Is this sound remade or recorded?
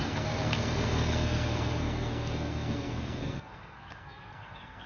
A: remade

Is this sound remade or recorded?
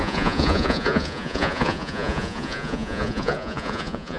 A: remade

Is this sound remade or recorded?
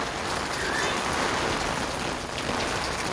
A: recorded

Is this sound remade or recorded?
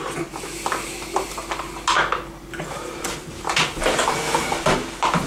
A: recorded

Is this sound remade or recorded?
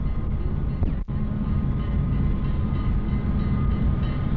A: recorded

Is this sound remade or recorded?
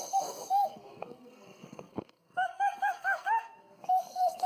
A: remade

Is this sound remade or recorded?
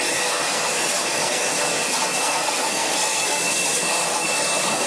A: remade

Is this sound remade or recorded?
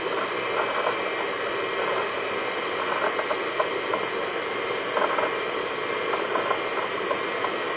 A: recorded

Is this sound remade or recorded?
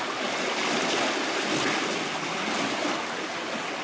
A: recorded